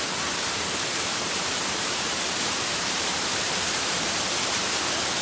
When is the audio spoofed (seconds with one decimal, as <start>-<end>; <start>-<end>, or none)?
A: 1.1-4.2